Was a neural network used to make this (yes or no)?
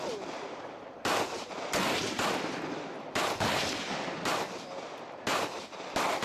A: yes